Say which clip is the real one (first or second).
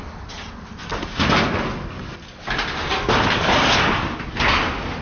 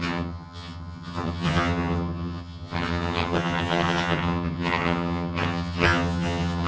first